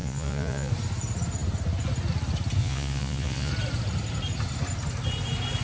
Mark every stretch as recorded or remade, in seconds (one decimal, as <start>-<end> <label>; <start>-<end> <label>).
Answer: 0.0-0.7 remade; 0.7-2.6 recorded; 2.6-3.5 remade; 3.5-5.6 recorded